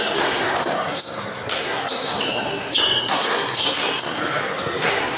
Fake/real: fake